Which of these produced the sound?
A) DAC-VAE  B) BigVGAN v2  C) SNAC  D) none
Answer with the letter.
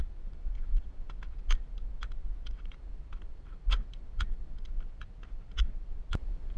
D